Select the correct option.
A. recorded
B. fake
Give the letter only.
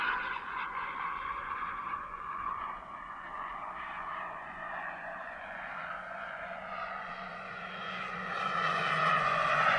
B